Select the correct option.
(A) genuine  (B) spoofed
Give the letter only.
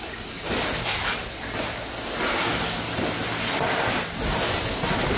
A